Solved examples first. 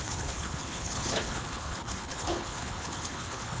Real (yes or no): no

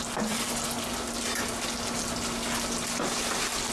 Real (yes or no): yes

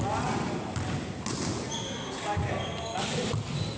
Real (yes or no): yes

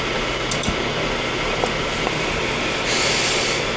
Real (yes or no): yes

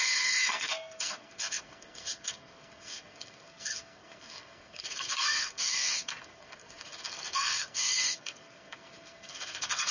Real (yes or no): no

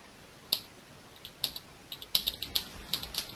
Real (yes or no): yes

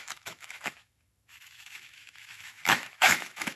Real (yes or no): no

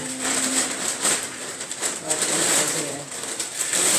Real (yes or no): no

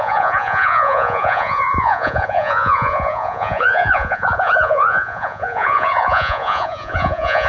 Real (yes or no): no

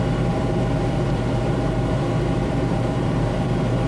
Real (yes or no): no